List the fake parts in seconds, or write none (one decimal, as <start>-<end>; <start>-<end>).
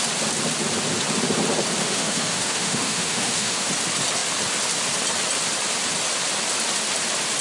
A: 1.8-3.7